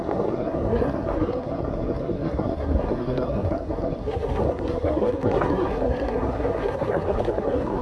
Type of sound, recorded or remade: remade